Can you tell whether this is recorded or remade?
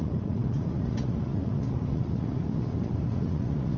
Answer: remade